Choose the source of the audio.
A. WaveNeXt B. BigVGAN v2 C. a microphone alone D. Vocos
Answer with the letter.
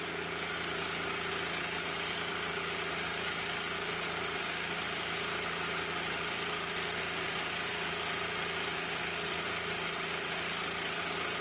C